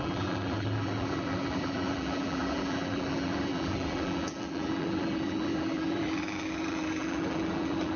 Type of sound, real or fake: fake